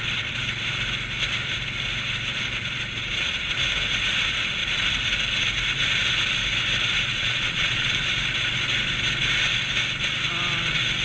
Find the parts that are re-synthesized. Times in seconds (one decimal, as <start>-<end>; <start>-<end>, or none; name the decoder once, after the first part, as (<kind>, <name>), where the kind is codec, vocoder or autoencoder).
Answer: 7.1-8.0 (vocoder, Vocos)